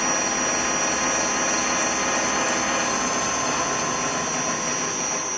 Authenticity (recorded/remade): recorded